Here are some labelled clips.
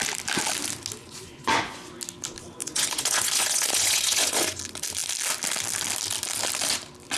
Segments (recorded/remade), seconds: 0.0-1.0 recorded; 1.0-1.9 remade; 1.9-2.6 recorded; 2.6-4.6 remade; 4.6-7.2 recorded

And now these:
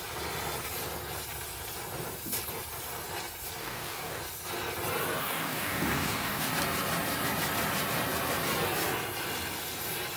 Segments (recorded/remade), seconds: 0.0-3.6 recorded; 3.6-4.2 remade; 4.2-5.2 recorded; 5.2-6.5 remade; 6.5-10.2 recorded